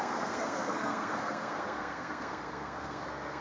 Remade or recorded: remade